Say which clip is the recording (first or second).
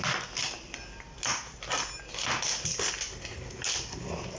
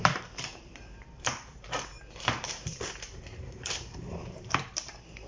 first